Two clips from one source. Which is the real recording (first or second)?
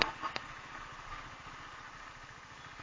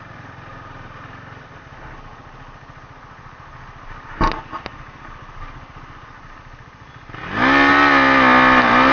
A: second